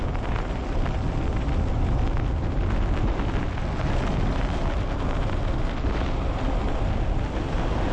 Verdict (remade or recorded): recorded